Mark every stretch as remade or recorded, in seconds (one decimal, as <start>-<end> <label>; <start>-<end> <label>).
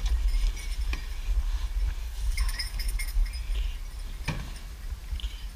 0.0-2.0 recorded; 2.0-3.3 remade; 3.3-5.6 recorded